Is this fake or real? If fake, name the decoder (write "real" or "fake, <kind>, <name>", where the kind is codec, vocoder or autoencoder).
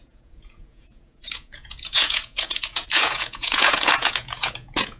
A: fake, vocoder, Vocos